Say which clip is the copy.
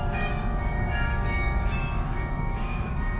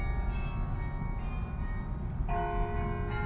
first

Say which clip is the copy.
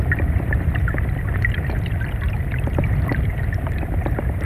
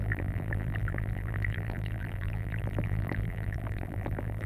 second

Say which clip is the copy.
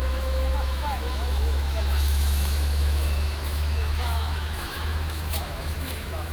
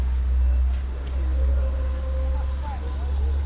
first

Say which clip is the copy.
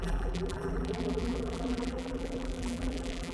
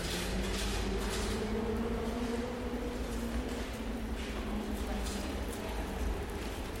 first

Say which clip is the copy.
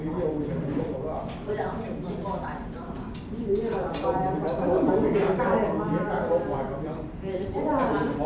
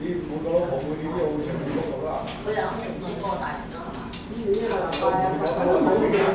first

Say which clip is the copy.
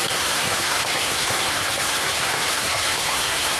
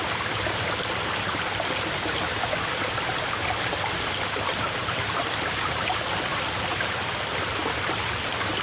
first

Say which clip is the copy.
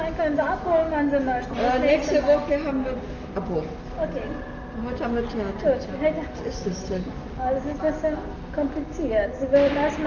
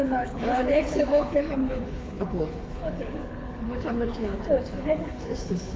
second